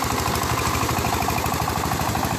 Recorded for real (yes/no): yes